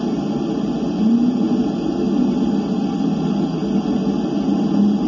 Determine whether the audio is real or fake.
real